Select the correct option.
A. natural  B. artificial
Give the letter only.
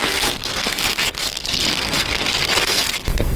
B